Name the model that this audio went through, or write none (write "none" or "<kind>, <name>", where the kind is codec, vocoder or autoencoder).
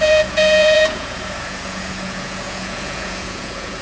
vocoder, Vocos